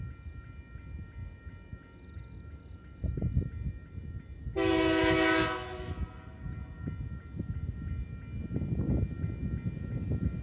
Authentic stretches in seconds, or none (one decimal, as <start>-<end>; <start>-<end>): 0.0-10.4